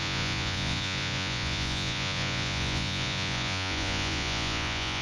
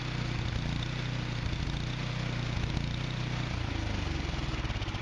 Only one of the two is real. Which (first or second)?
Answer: second